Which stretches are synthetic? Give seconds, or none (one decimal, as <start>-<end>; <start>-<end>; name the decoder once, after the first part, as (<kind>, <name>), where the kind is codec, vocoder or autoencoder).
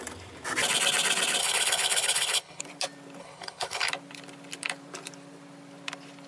1.4-2.6 (codec, HILCodec); 3.2-3.9